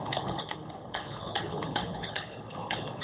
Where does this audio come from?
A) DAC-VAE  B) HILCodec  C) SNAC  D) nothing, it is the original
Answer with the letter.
B